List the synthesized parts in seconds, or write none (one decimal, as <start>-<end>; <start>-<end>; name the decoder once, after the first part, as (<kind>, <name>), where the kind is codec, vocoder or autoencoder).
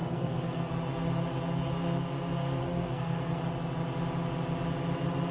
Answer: 0.0-0.7 (codec, SNAC); 2.6-3.4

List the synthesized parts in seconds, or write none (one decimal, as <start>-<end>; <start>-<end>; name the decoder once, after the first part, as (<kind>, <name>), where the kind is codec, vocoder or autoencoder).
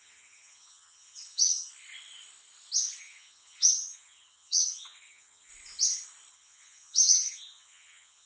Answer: 0.0-1.7 (vocoder, HiFi-GAN); 3.0-5.5; 6.3-8.3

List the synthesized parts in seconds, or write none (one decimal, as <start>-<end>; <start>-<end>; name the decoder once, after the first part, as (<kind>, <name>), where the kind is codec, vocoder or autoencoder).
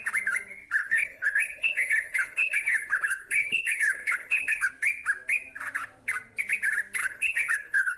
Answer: 0.8-4.7 (codec, HILCodec); 7.0-8.0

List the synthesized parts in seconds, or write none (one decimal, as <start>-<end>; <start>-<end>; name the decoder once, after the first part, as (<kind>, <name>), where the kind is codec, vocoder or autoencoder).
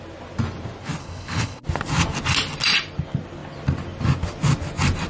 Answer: 1.0-1.6 (codec, HILCodec)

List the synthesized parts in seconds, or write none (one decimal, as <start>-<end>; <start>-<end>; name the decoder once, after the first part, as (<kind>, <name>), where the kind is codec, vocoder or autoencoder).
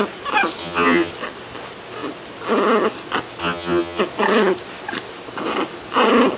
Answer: 0.6-1.1 (vocoder, HiFi-GAN); 3.4-4.0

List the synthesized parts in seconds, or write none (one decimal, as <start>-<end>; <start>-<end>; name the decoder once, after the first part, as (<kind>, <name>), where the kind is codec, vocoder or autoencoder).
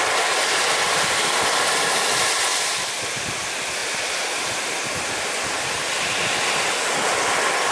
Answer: 2.5-3.1 (vocoder, BigVGAN v2); 3.8-4.5